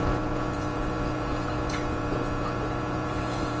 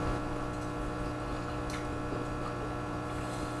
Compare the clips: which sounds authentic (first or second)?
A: second